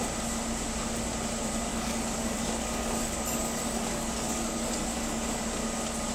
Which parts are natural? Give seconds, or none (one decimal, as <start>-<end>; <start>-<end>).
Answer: 0.0-1.7; 5.4-6.1